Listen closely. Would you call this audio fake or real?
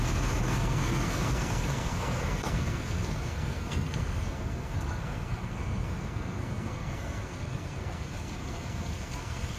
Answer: fake